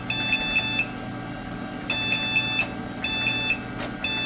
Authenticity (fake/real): real